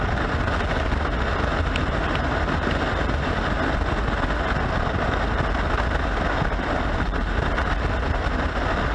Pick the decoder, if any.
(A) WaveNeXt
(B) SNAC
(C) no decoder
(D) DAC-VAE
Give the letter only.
C